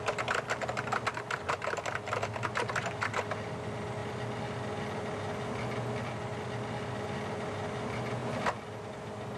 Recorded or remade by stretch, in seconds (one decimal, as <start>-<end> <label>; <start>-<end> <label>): 0.0-9.4 recorded